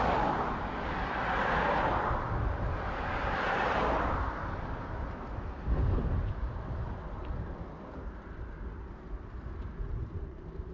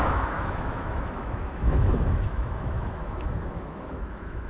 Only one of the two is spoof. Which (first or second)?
second